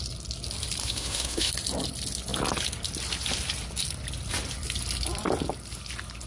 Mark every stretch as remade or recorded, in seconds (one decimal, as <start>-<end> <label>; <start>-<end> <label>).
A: 0.0-0.8 recorded; 0.8-1.5 remade; 1.5-6.3 recorded